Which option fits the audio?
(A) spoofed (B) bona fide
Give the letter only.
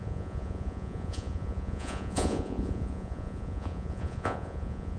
A